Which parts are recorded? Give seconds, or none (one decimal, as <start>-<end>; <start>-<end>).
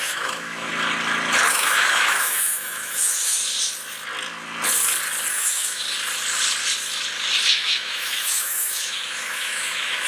0.7-1.5; 3.4-5.3; 5.8-7.5